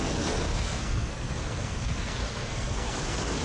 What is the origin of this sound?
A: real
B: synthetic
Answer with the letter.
B